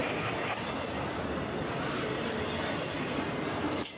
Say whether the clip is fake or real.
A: real